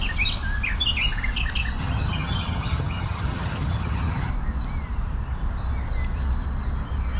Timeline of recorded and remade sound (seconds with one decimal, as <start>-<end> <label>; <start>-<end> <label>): 0.0-1.8 recorded; 1.8-4.3 remade; 4.3-7.2 recorded